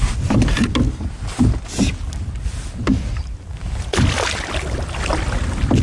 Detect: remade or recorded recorded